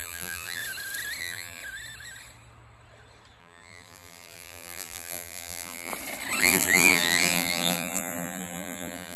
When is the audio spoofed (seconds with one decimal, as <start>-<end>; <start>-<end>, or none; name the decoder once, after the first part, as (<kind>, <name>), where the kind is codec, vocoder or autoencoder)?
0.0-0.6 (vocoder, BigVGAN v2); 1.2-1.6; 3.4-5.9; 6.4-9.2